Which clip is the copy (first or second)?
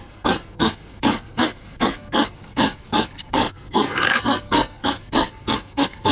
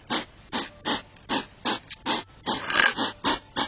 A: first